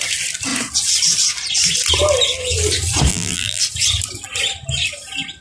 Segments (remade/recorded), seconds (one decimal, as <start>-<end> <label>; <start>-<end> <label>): 0.0-3.1 recorded; 3.1-3.6 remade; 3.6-5.4 recorded